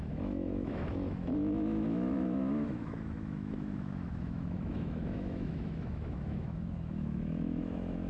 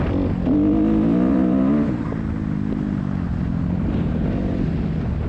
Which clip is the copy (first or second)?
first